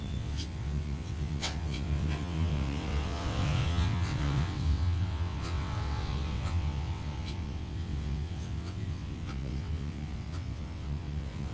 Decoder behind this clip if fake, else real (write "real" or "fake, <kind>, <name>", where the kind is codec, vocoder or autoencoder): fake, vocoder, WaveNeXt